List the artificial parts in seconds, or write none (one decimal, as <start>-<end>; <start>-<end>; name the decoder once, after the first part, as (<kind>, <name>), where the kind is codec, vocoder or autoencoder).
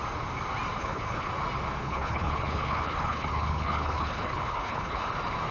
0.8-1.3 (codec, HILCodec); 1.8-5.1